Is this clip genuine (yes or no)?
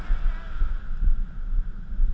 yes